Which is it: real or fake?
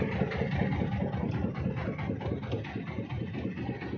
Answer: real